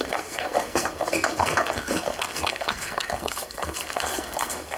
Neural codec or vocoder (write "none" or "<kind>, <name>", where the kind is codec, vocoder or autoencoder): codec, SNAC